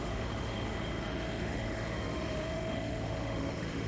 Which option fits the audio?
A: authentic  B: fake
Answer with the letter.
B